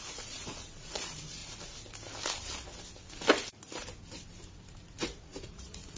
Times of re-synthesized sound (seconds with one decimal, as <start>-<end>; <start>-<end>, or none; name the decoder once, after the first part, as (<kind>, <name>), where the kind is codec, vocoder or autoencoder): 0.0-1.4 (vocoder, Vocos); 5.0-6.0